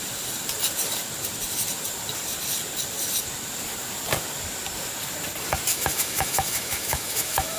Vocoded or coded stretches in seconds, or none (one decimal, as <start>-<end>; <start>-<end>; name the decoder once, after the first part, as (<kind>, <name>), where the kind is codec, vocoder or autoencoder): 5.7-7.6 (autoencoder, DAC-VAE)

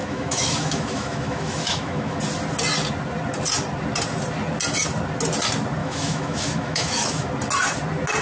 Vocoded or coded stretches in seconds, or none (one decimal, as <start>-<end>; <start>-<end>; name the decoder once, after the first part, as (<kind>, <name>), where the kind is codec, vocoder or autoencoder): 0.0-2.2 (autoencoder, DAC-VAE); 5.8-7.3

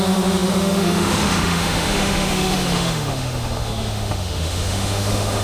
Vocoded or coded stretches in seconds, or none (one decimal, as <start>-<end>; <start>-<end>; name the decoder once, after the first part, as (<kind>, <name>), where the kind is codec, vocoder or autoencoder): 0.0-5.4 (autoencoder, DAC-VAE)

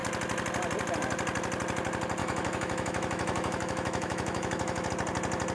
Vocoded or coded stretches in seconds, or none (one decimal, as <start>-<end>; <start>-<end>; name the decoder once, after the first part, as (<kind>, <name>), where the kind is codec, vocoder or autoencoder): 2.2-4.9 (autoencoder, DAC-VAE)

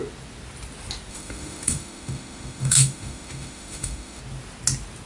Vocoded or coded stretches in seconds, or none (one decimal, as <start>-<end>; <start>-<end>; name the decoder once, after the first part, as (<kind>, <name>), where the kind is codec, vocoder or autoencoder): 1.1-4.2 (autoencoder, DAC-VAE)

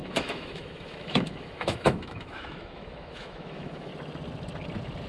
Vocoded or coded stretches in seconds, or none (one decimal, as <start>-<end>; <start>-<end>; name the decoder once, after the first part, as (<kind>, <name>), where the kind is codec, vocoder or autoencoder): 0.0-3.9 (autoencoder, DAC-VAE)

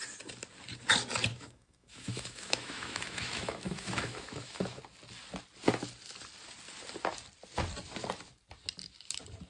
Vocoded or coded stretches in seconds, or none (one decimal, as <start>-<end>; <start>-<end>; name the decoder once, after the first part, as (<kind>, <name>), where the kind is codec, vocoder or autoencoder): 1.3-4.8 (autoencoder, DAC-VAE)

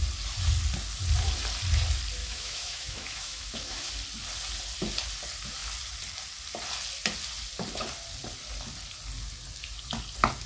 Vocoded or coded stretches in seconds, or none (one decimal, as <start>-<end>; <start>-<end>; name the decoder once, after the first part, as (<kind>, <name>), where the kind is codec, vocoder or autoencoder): 2.2-3.9 (autoencoder, DAC-VAE)